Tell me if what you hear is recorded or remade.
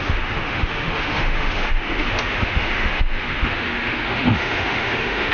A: remade